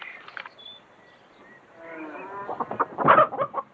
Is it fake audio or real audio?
real